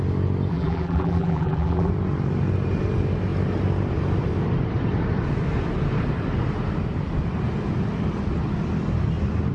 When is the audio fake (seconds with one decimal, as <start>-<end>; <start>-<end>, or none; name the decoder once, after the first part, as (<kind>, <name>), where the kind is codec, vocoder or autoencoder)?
0.5-1.9 (vocoder, BigVGAN v2)